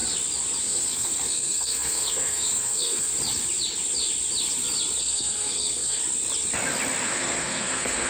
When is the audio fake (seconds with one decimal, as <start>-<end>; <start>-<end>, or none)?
0.6-3.1; 5.0-6.0; 7.0-8.1